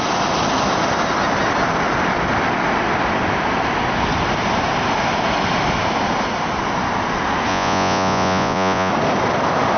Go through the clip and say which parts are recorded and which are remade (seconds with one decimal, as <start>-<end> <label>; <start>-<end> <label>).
0.0-7.5 recorded; 7.5-8.9 remade; 8.9-9.8 recorded

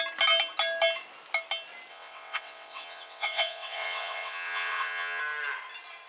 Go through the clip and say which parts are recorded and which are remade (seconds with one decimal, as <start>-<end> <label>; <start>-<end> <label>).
0.0-1.9 recorded; 1.9-5.2 remade; 5.2-6.1 recorded

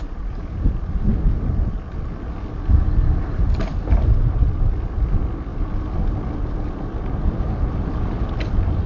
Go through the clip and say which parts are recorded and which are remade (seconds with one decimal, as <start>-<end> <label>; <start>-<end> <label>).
0.0-8.9 recorded

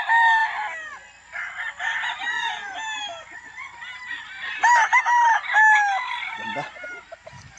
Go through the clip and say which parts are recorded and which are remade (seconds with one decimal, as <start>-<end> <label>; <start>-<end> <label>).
0.0-7.6 recorded

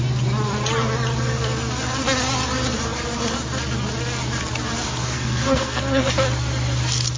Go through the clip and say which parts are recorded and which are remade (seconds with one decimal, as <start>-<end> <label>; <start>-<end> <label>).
0.0-5.0 recorded; 5.0-6.1 remade; 6.1-7.2 recorded